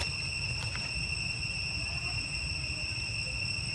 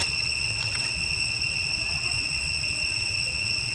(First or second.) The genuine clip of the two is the first